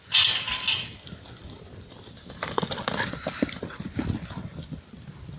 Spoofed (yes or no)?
no